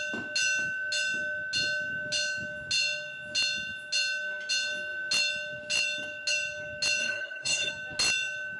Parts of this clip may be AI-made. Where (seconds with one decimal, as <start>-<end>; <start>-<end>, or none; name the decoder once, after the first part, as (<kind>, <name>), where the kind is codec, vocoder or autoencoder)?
7.0-7.7 (codec, SNAC)